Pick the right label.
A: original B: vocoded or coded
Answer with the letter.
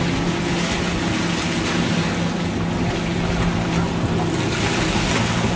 A